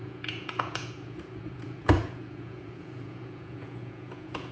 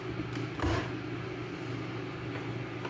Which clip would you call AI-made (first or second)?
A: first